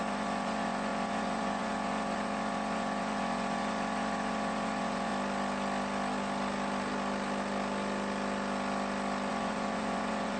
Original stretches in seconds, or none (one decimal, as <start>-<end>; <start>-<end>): 5.1-9.3

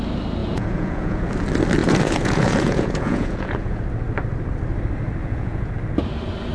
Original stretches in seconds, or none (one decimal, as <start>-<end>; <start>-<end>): 0.0-0.4; 1.3-1.8; 3.8-5.2; 5.7-6.5

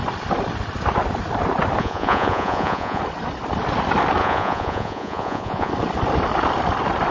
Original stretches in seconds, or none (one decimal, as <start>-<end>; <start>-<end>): 0.0-1.8; 3.0-4.2; 5.7-7.1

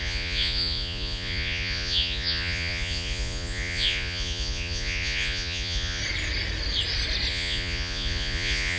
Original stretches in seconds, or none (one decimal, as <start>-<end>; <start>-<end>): 6.0-7.3

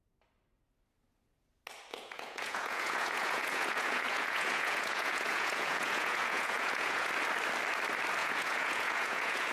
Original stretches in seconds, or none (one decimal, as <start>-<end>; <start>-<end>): 0.0-1.9; 7.1-8.2